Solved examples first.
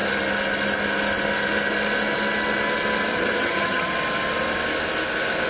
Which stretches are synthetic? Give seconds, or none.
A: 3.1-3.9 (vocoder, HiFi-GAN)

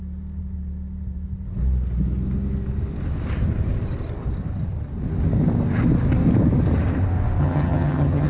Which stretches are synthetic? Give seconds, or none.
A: 7.4-8.3 (vocoder, HiFi-GAN)

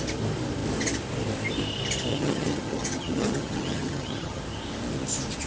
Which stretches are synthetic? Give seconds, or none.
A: 2.1-4.4 (vocoder, HiFi-GAN)

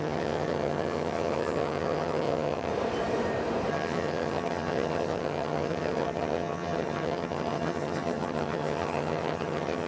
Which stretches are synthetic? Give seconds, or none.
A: 0.0-2.7 (vocoder, HiFi-GAN); 3.7-9.9

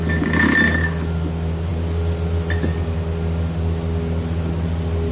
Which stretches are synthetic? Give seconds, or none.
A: none